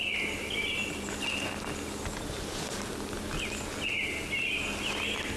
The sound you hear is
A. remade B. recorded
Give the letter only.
B